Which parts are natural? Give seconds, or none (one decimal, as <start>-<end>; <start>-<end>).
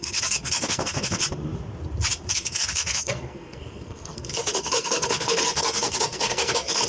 1.2-2.3